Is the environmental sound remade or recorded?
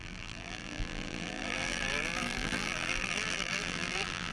remade